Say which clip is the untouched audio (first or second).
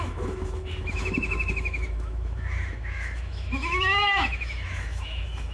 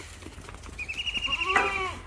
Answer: second